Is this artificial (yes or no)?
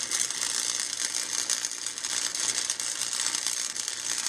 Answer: no